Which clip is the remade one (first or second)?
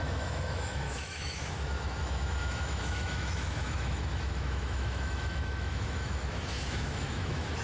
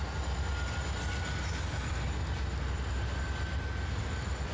first